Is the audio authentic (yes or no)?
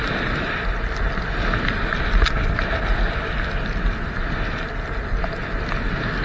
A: yes